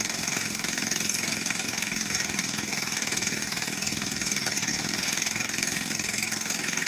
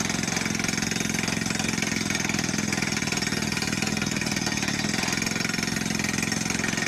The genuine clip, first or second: second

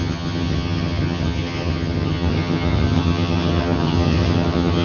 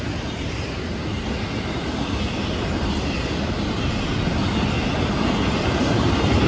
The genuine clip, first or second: second